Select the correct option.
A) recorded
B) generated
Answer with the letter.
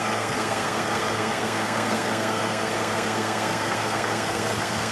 B